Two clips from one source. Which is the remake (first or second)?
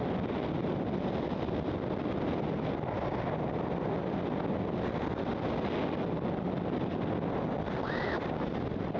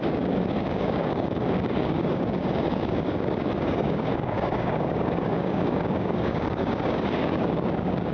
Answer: second